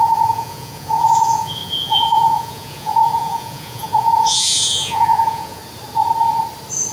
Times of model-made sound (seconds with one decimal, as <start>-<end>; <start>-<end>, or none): 0.0-5.6